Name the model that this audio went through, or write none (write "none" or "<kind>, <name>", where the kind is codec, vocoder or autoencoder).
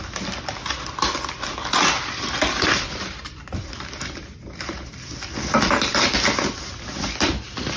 none